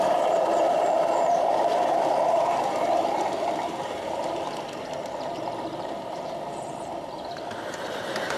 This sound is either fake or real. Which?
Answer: fake